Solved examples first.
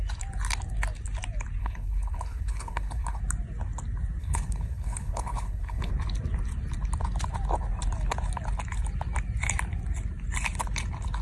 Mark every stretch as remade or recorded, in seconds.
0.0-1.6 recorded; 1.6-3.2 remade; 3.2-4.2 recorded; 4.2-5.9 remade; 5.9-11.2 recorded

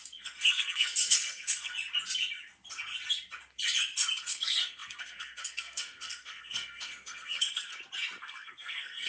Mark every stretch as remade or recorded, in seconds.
0.0-1.7 remade; 1.7-4.2 recorded; 4.2-7.7 remade; 7.7-8.2 recorded; 8.2-9.1 remade

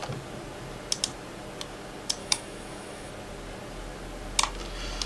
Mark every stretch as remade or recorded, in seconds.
0.0-2.2 recorded; 2.2-3.1 remade; 3.1-5.1 recorded

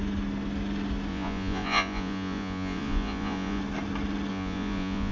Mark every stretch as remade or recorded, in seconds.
0.0-1.1 recorded; 1.1-3.6 remade; 3.6-4.3 recorded; 4.3-5.1 remade

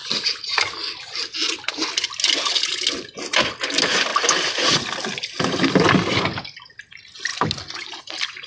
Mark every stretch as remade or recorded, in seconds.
0.0-8.5 recorded